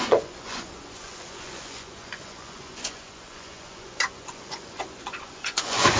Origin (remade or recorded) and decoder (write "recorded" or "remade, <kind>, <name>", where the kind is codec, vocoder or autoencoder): remade, vocoder, Vocos